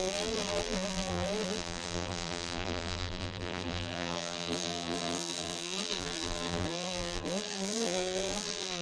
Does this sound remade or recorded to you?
remade